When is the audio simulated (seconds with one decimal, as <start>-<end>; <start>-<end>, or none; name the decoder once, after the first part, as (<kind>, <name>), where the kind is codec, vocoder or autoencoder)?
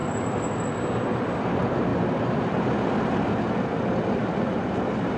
0.0-0.8 (vocoder, BigVGAN v2)